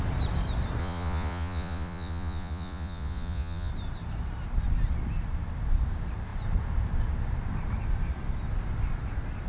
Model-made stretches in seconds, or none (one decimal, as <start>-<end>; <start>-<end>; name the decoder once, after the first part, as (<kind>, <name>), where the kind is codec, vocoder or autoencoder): 0.8-3.7 (vocoder, Vocos)